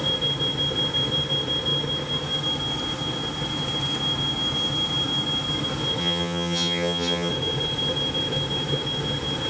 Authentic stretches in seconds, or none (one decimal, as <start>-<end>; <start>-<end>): 0.0-6.0; 7.3-9.5